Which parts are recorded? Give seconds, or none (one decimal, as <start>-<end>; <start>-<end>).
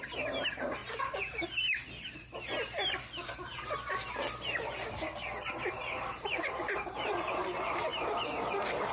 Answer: 0.8-5.6